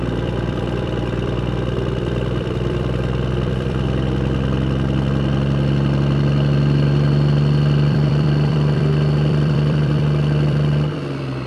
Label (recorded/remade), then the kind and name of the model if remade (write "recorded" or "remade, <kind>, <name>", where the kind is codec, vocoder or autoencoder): remade, vocoder, BigVGAN v2